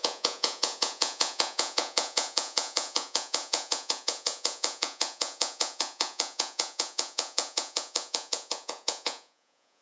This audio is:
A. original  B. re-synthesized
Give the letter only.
B